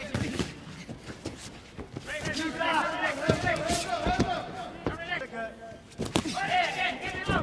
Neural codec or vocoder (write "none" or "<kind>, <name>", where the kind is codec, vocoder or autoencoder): none